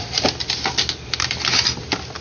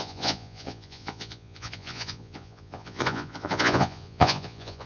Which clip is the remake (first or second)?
second